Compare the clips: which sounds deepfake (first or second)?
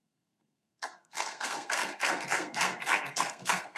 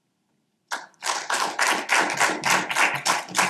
first